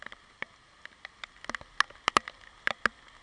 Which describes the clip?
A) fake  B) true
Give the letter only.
B